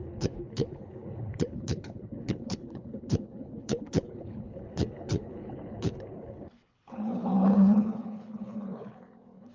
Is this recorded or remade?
remade